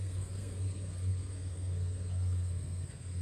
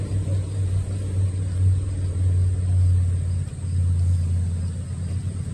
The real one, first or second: second